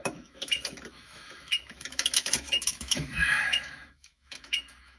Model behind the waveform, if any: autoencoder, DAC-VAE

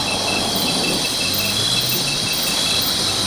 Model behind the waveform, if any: none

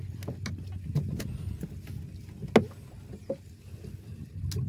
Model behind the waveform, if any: none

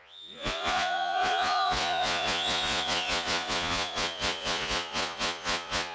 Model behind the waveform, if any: vocoder, Vocos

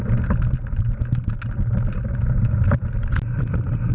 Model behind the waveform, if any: none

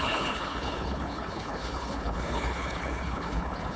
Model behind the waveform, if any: codec, HILCodec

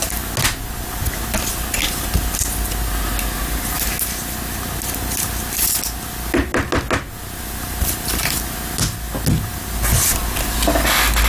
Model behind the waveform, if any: none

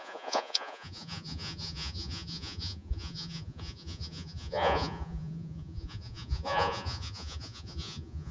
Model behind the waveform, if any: vocoder, Vocos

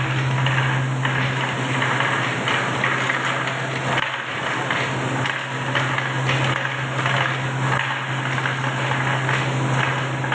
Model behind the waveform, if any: none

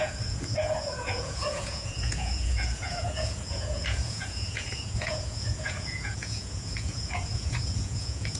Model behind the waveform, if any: vocoder, Vocos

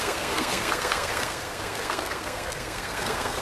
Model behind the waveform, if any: codec, SNAC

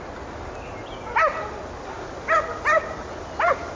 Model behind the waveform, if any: none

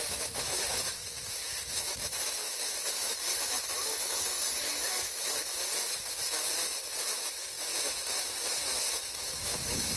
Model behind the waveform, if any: autoencoder, DAC-VAE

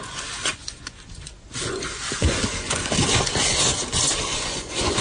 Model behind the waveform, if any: vocoder, Vocos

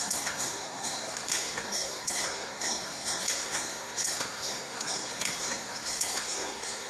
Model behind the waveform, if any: codec, SNAC